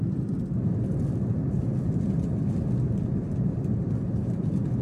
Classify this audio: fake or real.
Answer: real